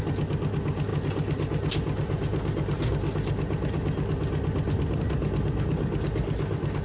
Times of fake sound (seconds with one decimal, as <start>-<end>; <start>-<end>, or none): none